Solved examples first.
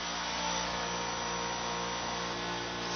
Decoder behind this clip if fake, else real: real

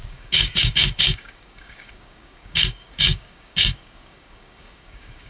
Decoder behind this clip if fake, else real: fake, codec, DAC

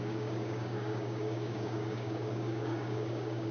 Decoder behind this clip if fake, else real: fake, codec, DAC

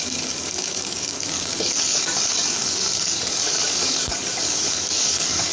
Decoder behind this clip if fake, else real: fake, codec, DAC